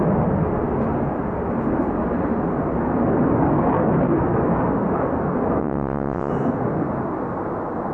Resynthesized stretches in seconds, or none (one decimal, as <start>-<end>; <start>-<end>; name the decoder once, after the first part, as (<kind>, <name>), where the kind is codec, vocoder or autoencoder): 5.6-6.3 (vocoder, WaveNeXt)